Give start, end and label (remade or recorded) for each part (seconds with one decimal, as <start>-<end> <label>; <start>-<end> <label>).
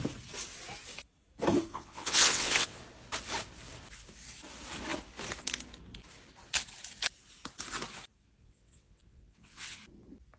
0.0-1.7 recorded; 1.7-2.8 remade; 2.8-8.4 recorded; 8.4-9.8 remade; 9.8-10.4 recorded